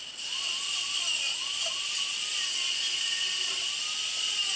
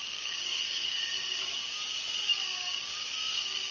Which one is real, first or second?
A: first